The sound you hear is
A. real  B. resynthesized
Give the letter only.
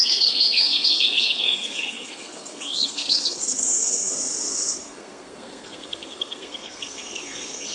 B